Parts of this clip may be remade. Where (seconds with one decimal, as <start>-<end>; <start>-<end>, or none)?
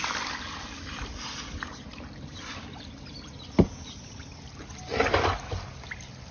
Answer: none